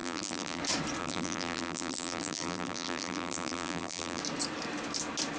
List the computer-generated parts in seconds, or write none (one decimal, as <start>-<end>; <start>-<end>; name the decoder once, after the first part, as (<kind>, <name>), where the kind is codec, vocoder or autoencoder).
0.0-0.6 (vocoder, BigVGAN v2); 1.0-4.2